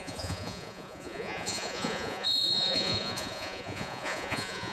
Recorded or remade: remade